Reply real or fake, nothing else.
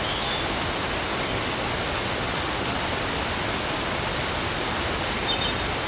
real